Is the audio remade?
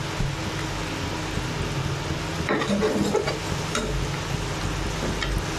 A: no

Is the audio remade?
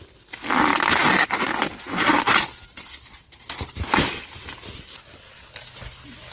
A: no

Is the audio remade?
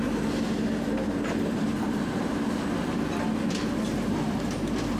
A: no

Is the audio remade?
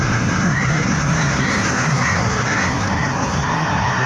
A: yes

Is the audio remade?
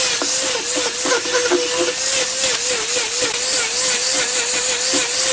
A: no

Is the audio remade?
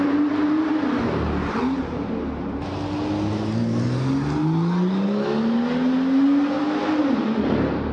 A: no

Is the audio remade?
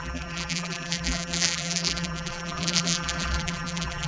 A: yes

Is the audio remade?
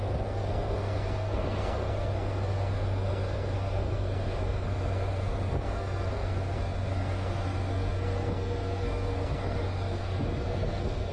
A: yes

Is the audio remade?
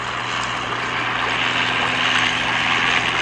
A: no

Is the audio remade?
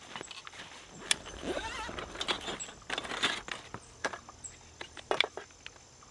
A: no